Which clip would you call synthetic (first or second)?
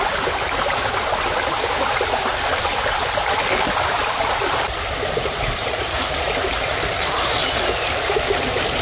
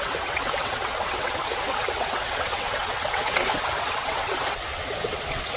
second